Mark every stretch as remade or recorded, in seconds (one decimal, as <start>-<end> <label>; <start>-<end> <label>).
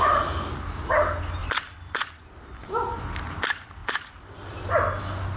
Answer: 0.0-1.4 recorded; 1.4-3.0 remade; 3.0-3.8 recorded; 3.8-4.7 remade; 4.7-5.4 recorded